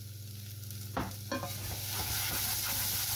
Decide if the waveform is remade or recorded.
recorded